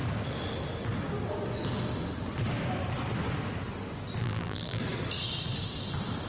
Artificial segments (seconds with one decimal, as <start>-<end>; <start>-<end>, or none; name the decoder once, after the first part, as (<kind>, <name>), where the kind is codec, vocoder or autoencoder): 4.2-4.8 (vocoder, BigVGAN v2)